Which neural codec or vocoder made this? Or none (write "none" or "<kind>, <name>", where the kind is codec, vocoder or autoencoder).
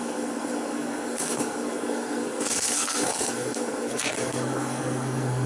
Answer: codec, SNAC